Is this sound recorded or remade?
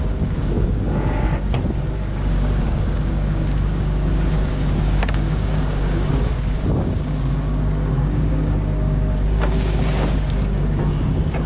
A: remade